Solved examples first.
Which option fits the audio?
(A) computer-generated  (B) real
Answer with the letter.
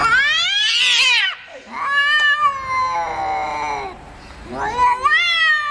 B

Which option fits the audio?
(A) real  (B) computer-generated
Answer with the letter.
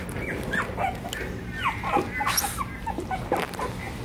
A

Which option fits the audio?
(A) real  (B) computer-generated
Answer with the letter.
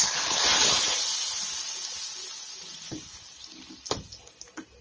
A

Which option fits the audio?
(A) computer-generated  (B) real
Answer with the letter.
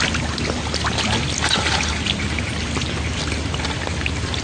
B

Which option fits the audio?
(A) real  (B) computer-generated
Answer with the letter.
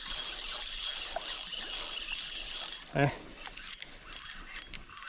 A